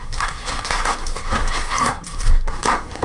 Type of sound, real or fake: fake